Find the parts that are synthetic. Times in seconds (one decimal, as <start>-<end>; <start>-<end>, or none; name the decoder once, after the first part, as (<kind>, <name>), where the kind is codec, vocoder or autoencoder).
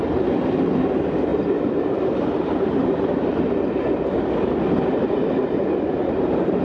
1.3-3.7 (vocoder, BigVGAN v2)